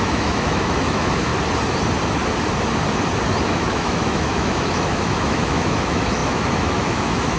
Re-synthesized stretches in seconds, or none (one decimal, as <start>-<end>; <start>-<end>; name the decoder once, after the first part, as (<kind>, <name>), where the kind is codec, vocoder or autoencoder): 0.0-1.3 (autoencoder, DAC-VAE); 3.4-7.4